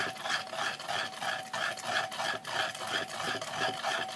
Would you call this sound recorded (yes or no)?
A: yes